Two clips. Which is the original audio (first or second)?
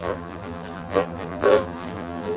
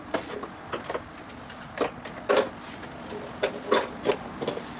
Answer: second